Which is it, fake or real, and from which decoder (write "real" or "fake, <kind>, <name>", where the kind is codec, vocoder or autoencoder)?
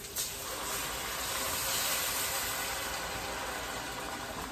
real